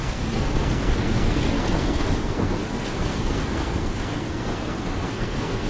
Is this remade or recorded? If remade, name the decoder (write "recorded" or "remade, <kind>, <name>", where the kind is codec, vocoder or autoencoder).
remade, codec, SNAC